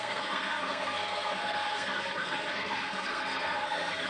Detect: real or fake fake